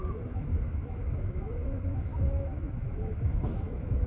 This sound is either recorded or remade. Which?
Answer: remade